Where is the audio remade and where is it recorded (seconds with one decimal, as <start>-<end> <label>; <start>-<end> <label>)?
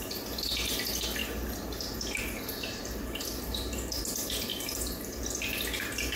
0.0-1.2 recorded; 1.2-4.0 remade; 4.0-4.5 recorded; 4.5-5.2 remade; 5.2-6.2 recorded